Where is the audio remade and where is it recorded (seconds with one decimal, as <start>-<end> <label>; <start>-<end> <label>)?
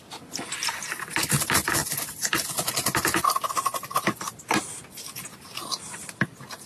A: 0.0-6.7 recorded